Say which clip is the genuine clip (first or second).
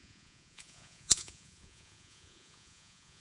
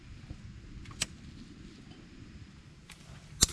second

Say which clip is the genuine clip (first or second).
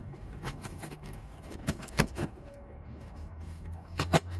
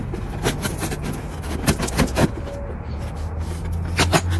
second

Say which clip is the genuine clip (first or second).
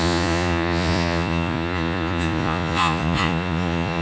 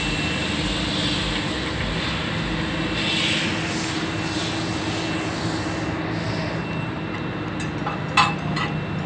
second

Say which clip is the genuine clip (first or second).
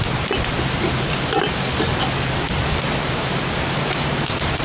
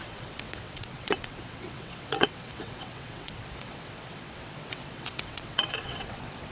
first